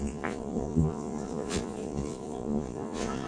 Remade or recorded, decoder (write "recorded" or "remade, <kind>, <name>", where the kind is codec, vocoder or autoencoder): remade, vocoder, Vocos